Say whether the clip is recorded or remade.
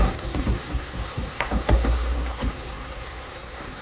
remade